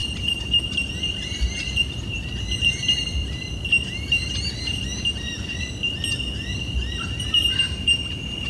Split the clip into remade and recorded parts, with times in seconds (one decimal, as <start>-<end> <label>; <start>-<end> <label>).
0.0-7.5 remade; 7.5-8.1 recorded; 8.1-8.5 remade